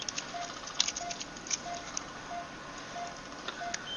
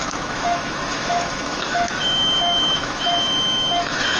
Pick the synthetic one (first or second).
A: second